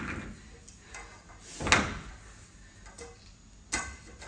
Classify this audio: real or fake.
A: real